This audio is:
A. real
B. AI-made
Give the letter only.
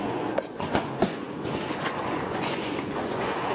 B